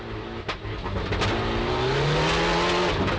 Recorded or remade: recorded